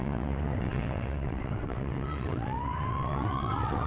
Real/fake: fake